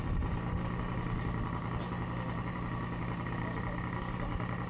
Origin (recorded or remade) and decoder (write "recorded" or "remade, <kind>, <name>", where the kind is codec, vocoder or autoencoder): recorded